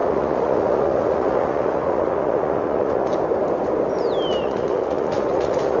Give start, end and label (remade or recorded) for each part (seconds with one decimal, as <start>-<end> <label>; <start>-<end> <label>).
0.0-3.1 remade; 3.1-4.4 recorded; 4.4-5.8 remade